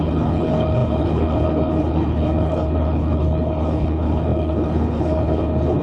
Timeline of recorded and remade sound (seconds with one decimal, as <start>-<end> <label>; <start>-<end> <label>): 0.0-5.8 remade